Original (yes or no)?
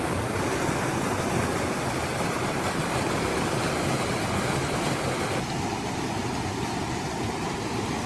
yes